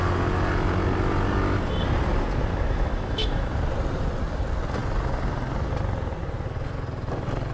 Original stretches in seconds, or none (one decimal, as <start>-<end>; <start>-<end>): 0.0-2.5; 3.5-7.5